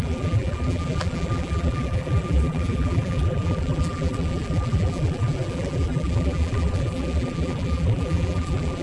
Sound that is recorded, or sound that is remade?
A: remade